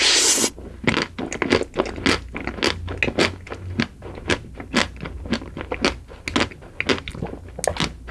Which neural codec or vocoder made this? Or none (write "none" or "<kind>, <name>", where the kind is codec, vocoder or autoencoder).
none